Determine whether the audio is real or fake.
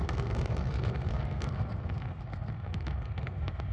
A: fake